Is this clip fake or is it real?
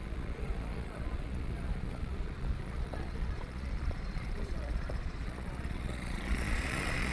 fake